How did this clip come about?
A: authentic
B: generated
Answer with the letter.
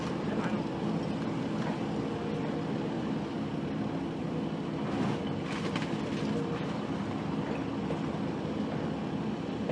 A